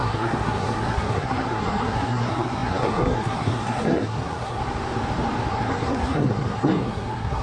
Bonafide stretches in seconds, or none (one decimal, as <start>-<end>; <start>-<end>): 4.6-5.5